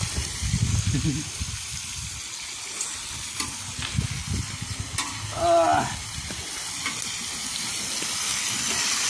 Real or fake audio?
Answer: real